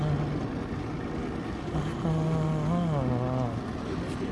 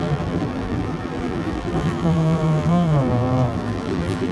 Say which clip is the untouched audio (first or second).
first